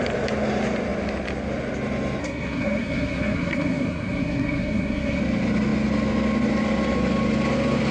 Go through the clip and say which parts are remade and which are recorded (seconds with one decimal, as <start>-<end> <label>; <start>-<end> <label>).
0.0-2.2 recorded; 2.2-5.2 remade; 5.2-7.9 recorded